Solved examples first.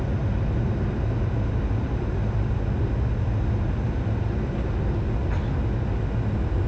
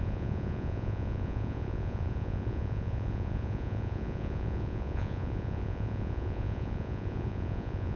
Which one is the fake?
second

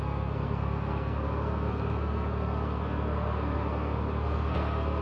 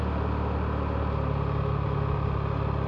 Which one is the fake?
first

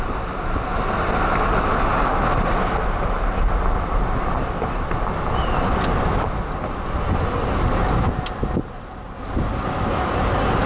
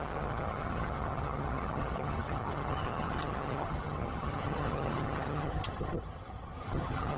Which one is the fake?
second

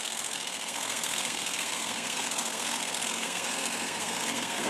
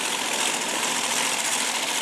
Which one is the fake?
first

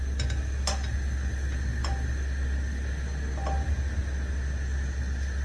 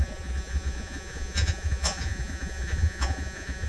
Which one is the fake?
second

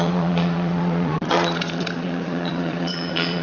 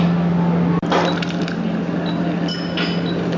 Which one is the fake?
first